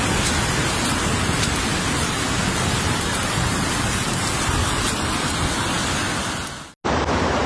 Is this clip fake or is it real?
real